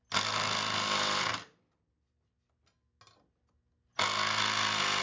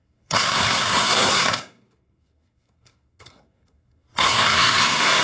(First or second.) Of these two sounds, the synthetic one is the second